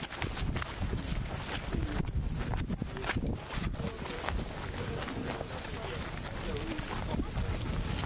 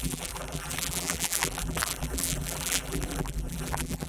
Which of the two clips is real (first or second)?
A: first